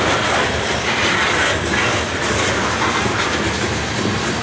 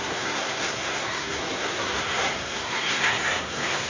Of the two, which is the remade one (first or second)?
second